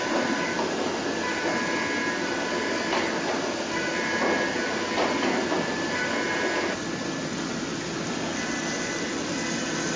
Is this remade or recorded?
recorded